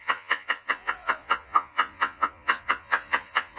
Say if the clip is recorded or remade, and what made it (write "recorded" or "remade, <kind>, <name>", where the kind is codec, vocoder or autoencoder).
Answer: remade, vocoder, Vocos